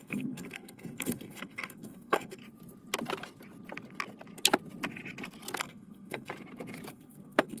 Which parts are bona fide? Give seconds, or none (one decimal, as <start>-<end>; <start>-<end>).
2.4-5.6; 6.3-6.9